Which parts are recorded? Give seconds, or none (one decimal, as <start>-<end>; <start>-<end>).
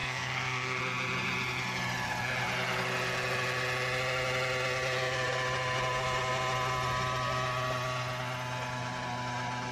0.8-9.7